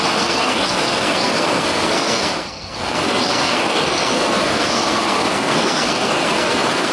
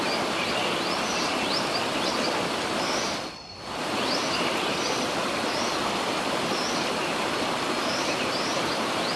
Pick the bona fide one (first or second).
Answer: second